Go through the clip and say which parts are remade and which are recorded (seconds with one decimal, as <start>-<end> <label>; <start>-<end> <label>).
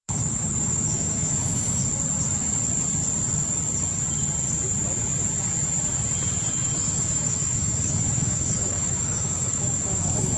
0.0-1.8 remade; 1.8-6.5 recorded; 6.5-10.4 remade